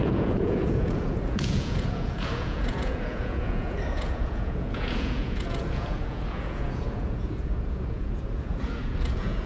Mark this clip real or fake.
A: fake